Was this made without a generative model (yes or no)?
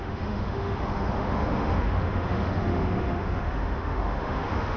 no